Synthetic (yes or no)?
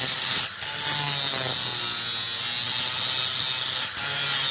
no